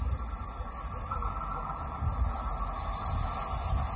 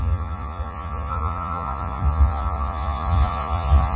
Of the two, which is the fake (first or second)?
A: second